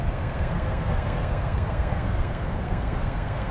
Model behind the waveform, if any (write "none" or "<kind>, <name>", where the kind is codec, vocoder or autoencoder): codec, SNAC